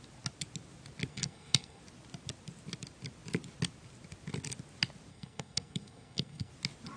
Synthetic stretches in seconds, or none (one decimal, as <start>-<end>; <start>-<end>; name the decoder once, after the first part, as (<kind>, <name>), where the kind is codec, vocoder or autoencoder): 1.1-1.8 (codec, SNAC); 5.1-6.5